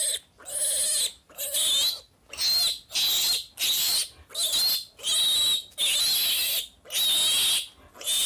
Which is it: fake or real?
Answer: real